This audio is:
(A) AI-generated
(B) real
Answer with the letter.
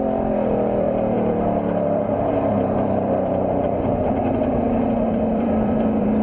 A